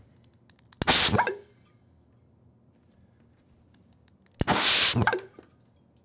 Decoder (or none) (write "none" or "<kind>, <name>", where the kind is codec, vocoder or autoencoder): none